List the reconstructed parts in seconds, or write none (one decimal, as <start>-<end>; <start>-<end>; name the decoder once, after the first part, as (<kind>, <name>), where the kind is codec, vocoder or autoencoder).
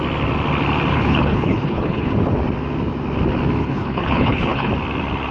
0.9-2.1 (codec, HILCodec); 3.6-4.7